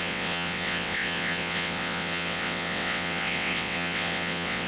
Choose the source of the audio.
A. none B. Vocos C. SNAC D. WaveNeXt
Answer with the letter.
D